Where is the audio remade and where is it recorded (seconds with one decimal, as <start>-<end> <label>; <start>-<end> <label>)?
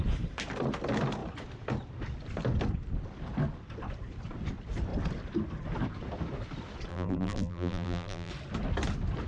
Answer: 0.0-6.9 recorded; 6.9-8.3 remade; 8.3-9.3 recorded